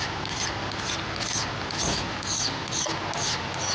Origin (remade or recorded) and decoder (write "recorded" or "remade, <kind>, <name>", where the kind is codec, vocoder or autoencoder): recorded